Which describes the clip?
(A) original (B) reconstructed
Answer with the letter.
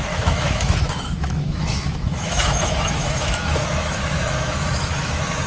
B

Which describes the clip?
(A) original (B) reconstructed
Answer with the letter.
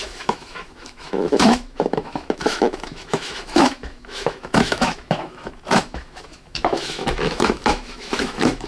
B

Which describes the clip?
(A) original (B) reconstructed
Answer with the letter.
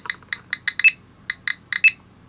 A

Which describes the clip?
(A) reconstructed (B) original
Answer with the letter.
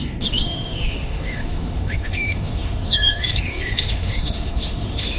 A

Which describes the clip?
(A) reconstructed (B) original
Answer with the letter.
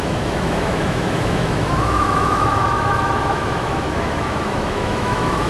A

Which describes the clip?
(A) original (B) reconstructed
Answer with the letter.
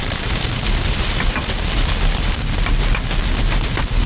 A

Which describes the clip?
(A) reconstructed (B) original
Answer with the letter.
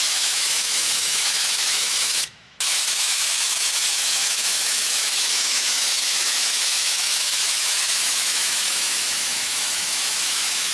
A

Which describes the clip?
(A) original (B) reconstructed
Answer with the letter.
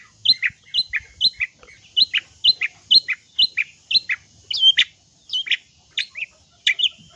A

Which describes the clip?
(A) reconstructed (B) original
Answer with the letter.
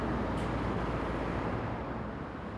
B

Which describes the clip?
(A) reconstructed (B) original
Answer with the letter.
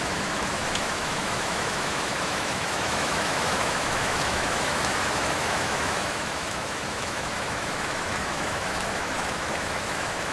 A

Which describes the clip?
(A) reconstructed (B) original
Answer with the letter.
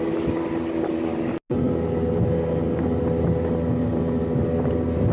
B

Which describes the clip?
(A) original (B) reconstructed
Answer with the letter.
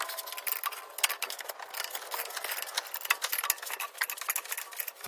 A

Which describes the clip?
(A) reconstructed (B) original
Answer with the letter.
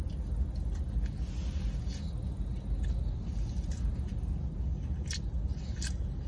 B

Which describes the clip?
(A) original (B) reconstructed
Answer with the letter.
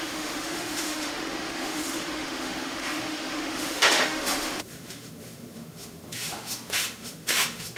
B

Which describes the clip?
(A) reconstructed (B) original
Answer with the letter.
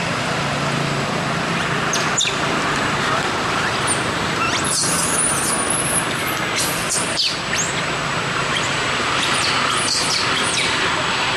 B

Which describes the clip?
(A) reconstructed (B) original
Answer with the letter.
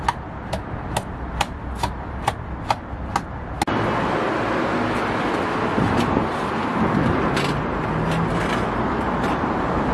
B